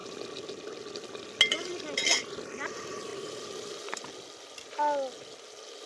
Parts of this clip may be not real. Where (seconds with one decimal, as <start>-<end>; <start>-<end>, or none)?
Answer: none